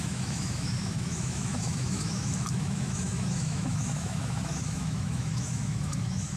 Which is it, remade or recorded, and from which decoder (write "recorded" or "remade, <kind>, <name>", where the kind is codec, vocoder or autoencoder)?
remade, autoencoder, DAC-VAE